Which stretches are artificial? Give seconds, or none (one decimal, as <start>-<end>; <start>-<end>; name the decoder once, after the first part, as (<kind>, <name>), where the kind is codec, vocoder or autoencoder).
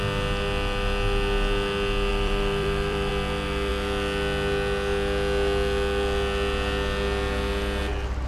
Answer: 2.1-3.1 (vocoder, BigVGAN v2)